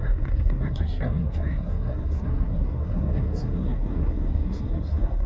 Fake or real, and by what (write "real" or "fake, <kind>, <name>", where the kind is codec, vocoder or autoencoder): fake, codec, SNAC